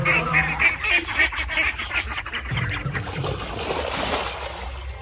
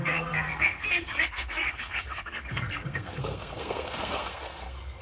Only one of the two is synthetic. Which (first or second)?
second